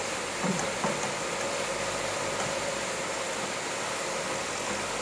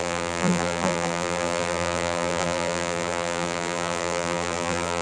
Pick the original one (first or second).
first